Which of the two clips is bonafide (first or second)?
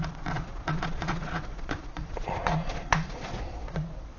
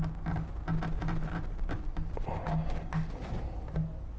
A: second